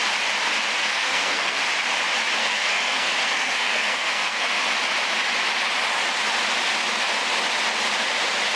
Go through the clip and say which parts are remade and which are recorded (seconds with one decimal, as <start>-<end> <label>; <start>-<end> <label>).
0.0-0.8 recorded; 0.8-1.6 remade; 1.6-2.4 recorded; 2.4-4.6 remade; 4.6-8.6 recorded